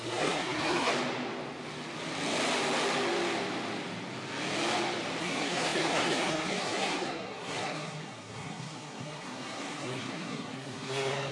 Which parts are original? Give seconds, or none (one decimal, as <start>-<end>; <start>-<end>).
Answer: 0.9-5.2